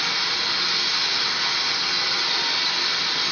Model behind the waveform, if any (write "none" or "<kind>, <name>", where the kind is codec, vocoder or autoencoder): none